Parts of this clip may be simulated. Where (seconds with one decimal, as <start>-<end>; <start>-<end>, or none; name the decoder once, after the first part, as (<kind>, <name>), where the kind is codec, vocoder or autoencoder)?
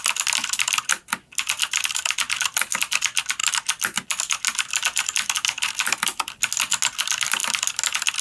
none